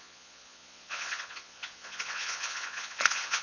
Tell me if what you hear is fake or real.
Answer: fake